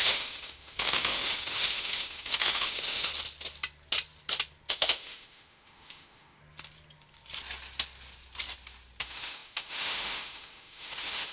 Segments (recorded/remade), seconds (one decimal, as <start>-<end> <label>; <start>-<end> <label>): 0.0-3.1 remade; 3.1-4.7 recorded; 4.7-6.4 remade; 6.4-9.0 recorded; 9.0-11.3 remade

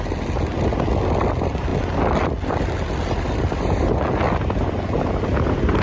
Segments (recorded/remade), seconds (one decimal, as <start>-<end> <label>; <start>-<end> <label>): 0.0-5.8 recorded

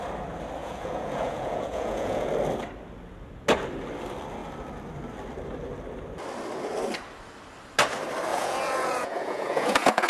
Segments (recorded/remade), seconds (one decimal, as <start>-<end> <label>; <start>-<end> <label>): 0.0-0.6 recorded; 0.6-2.3 remade; 2.3-8.3 recorded; 8.3-10.1 remade

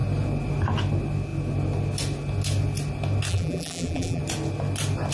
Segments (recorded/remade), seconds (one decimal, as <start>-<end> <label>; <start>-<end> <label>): 0.0-3.3 recorded; 3.3-4.2 remade; 4.2-5.1 recorded

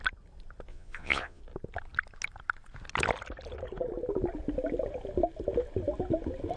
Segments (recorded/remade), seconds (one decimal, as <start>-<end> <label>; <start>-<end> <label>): 0.0-0.7 recorded; 0.7-1.4 remade; 1.4-6.6 recorded

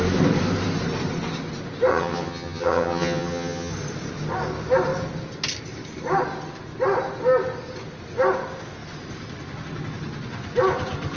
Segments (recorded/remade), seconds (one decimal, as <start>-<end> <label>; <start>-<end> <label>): 0.0-1.9 recorded; 1.9-3.7 remade; 3.7-11.2 recorded

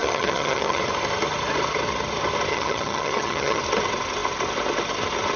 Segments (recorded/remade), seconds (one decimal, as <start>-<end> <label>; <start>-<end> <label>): 0.0-0.8 remade; 0.8-2.5 recorded; 2.5-3.6 remade; 3.6-5.4 recorded